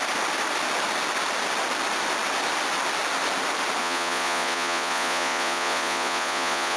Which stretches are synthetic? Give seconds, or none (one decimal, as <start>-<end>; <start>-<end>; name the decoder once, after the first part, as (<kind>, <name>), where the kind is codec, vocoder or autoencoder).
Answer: 3.8-6.8 (vocoder, Vocos)